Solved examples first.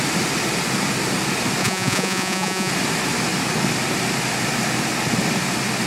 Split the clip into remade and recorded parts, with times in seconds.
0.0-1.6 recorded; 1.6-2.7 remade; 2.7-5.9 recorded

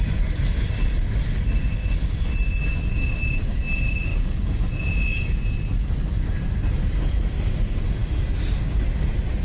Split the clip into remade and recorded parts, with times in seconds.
0.0-4.1 recorded; 4.1-5.4 remade; 5.4-9.4 recorded

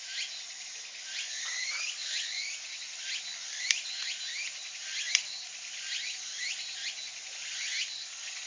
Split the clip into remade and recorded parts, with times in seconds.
0.0-2.0 recorded; 2.0-2.9 remade; 2.9-8.5 recorded

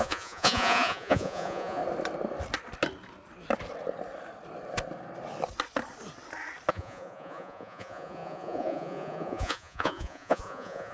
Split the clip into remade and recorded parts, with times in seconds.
0.0-1.8 remade; 1.8-6.7 recorded; 6.7-10.9 remade